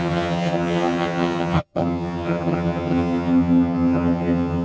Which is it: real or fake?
fake